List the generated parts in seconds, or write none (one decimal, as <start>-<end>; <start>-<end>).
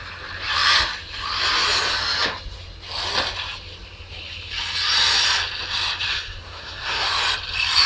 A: 6.1-7.1